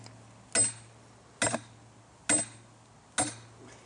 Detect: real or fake real